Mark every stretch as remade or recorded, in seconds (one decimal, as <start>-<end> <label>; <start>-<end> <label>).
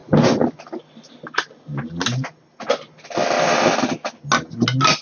0.0-5.0 recorded